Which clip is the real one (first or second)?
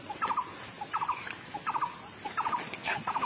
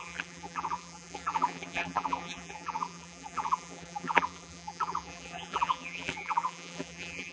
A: first